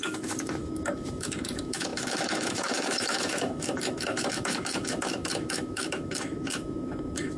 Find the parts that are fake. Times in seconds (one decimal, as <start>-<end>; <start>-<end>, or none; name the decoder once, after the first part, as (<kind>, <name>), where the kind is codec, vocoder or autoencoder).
0.0-7.4 (autoencoder, DAC-VAE)